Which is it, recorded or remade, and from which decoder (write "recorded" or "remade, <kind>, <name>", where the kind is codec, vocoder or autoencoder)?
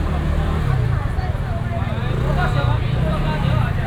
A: recorded